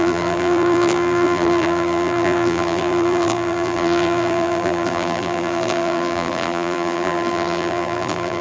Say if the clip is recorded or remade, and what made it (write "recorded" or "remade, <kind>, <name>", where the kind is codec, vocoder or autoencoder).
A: remade, vocoder, BigVGAN v2